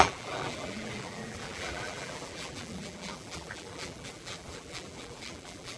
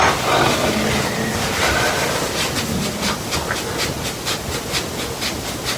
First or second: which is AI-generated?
first